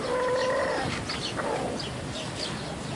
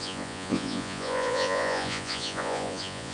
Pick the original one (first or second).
first